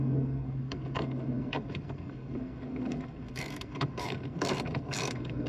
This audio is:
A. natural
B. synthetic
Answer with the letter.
B